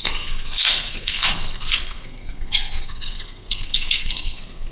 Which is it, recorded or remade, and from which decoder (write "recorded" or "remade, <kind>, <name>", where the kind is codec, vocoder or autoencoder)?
remade, codec, SNAC